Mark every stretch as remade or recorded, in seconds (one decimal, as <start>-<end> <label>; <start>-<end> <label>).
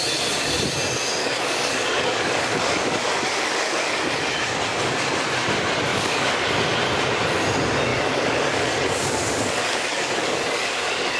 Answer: 0.0-1.2 recorded; 1.2-4.2 remade; 4.2-5.9 recorded; 5.9-6.6 remade; 6.6-7.9 recorded; 7.9-11.2 remade